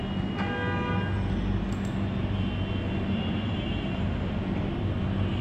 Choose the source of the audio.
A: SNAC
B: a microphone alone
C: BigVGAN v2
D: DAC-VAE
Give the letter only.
B